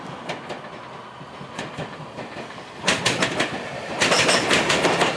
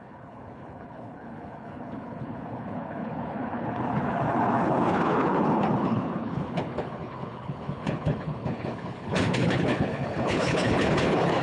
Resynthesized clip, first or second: second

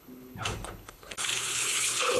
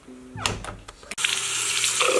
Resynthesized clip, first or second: first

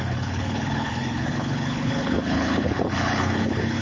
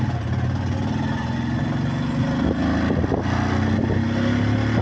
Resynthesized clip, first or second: first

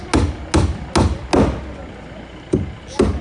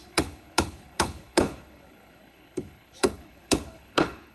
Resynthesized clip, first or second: second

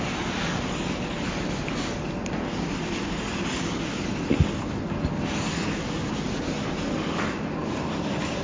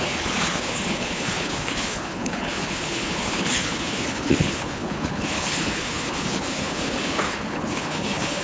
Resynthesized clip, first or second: second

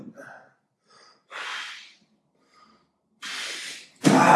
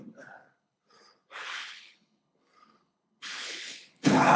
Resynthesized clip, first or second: second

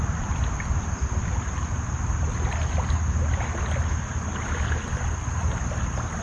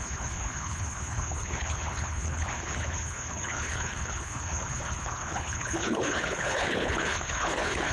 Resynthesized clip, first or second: second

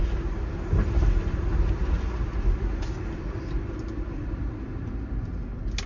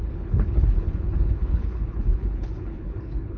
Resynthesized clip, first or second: second